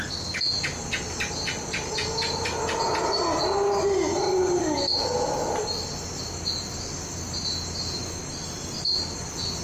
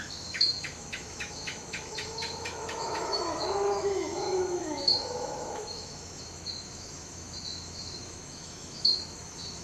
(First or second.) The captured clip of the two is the first